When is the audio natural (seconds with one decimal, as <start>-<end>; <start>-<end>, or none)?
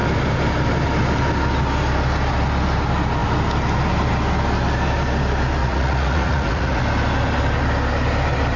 0.0-5.6; 6.8-8.6